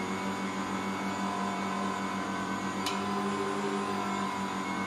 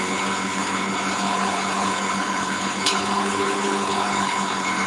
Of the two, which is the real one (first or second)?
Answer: first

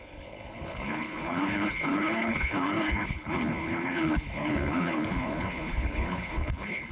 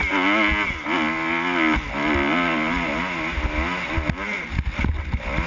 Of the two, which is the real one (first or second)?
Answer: second